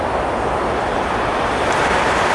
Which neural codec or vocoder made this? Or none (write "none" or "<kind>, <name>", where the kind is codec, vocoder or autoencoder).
vocoder, BigVGAN v2